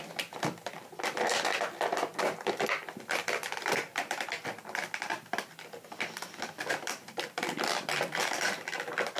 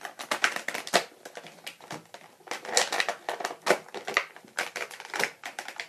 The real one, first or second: second